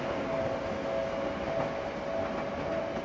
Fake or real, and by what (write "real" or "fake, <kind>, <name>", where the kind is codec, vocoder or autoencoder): real